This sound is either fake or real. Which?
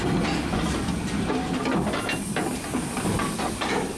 real